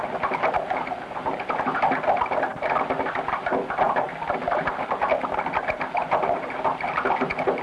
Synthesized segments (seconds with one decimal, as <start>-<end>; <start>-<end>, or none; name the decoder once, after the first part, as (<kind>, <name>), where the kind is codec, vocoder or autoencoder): none